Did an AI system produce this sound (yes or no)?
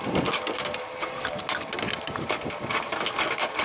no